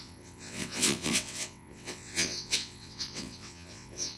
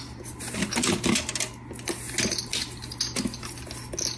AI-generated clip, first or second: first